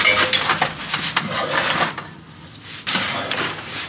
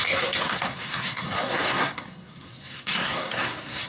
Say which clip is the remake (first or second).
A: second